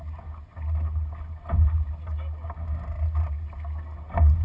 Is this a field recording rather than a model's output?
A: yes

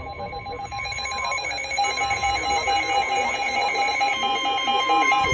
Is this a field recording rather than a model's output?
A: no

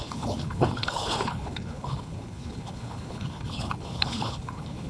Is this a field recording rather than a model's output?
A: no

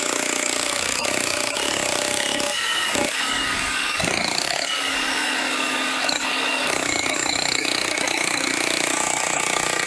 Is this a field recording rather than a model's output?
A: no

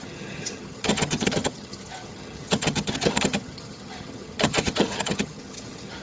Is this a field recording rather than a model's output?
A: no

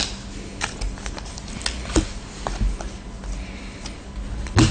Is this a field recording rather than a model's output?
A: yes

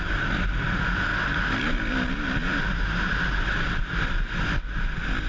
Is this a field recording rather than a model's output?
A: yes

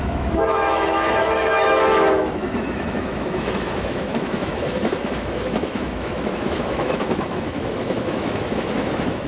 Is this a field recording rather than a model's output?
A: no